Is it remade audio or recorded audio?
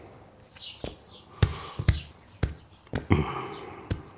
recorded